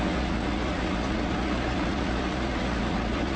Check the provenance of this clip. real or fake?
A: fake